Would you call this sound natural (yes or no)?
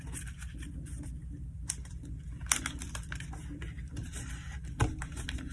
yes